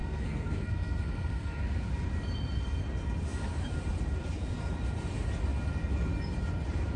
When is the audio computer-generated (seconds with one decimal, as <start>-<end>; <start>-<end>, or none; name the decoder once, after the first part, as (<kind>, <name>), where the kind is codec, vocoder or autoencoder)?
0.0-1.6 (codec, SNAC)